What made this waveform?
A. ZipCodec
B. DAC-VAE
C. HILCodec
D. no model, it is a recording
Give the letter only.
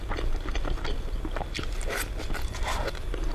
D